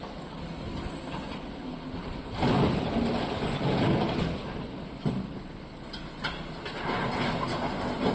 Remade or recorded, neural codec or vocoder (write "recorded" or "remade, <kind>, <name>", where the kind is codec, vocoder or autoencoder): recorded